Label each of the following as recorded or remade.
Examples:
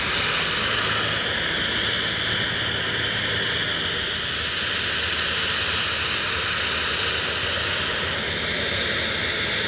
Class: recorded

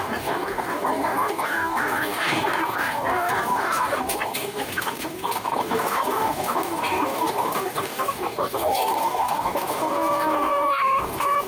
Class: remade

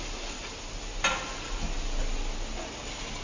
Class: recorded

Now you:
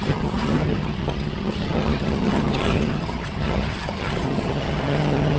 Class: remade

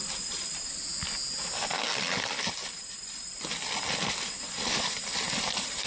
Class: recorded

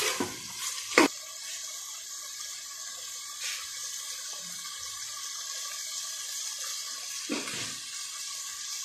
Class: recorded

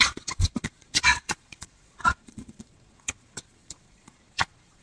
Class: remade